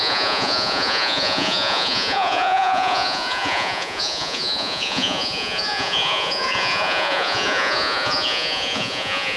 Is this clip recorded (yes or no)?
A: no